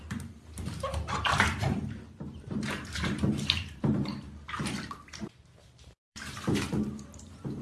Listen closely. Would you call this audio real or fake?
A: fake